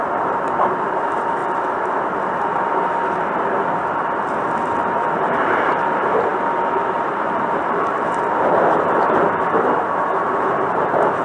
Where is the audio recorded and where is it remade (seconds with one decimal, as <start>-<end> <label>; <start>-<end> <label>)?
0.0-1.4 remade; 1.4-4.8 recorded; 4.8-11.2 remade